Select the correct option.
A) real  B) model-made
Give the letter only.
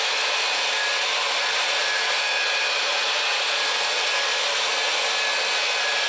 A